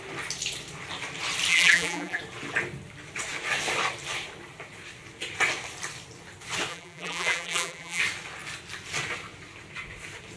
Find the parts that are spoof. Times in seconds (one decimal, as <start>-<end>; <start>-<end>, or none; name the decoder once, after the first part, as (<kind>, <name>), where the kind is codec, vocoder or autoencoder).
1.5-2.2 (vocoder, BigVGAN v2); 6.7-8.0